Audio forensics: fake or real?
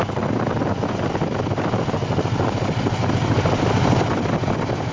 real